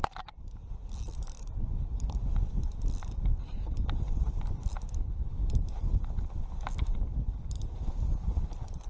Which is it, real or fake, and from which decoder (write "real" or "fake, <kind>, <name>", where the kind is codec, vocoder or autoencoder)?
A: real